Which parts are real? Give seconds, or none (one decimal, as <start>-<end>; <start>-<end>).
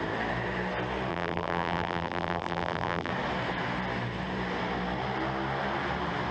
0.0-1.1; 3.1-6.3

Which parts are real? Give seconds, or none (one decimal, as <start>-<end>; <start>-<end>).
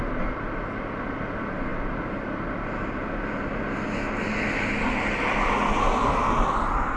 0.0-7.0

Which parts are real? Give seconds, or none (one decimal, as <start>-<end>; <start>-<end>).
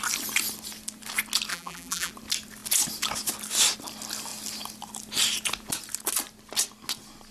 0.0-1.5; 2.1-7.3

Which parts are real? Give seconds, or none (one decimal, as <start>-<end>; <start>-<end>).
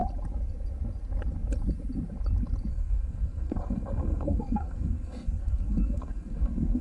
0.0-2.7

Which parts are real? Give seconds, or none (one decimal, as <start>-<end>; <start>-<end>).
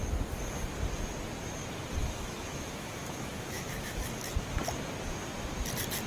0.0-2.0; 4.3-6.1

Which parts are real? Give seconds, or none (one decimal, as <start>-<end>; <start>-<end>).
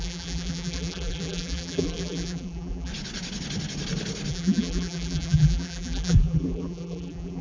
2.9-4.3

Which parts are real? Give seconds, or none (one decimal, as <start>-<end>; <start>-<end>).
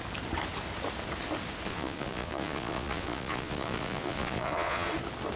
0.0-1.7; 4.9-5.4